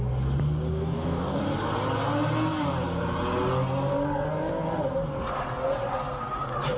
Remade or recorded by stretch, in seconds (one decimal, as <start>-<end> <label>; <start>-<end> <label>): 0.0-0.7 recorded; 0.7-1.4 remade; 1.4-6.8 recorded